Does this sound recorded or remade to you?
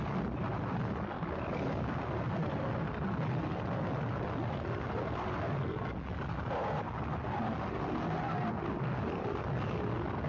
recorded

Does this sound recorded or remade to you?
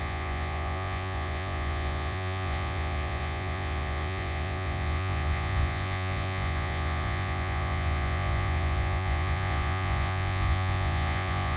remade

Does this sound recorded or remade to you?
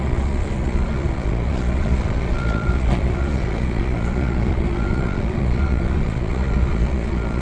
remade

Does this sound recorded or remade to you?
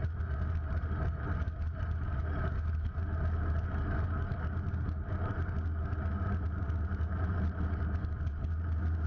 recorded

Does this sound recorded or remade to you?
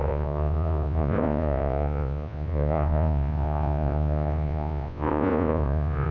remade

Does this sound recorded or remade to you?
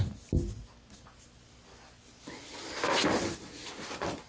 recorded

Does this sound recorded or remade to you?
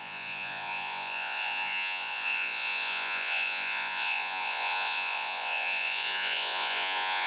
remade